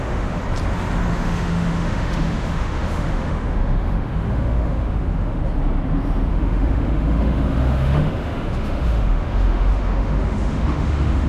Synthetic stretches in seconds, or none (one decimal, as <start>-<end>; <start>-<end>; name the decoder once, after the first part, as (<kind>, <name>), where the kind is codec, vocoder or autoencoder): 0.0-0.4 (autoencoder, DAC-VAE); 1.1-5.4; 6.3-11.3